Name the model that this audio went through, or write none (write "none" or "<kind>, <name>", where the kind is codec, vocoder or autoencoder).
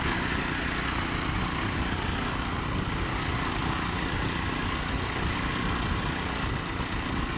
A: none